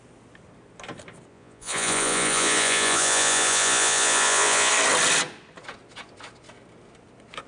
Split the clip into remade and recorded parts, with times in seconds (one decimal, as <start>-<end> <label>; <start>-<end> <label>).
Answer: 0.0-1.3 recorded; 1.3-4.7 remade; 4.7-7.5 recorded